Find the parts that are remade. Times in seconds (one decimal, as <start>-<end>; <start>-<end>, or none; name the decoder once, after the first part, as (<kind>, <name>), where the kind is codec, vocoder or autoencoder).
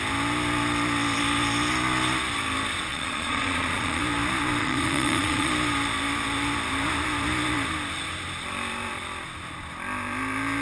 2.9-4.0 (vocoder, Vocos); 4.6-5.5